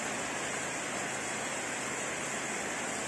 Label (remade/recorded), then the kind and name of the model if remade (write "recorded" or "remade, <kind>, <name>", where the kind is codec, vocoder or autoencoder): recorded